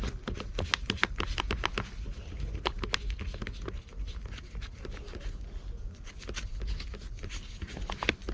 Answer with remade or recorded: recorded